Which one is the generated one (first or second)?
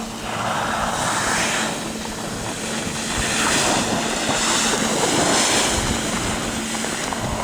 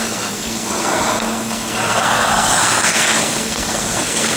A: second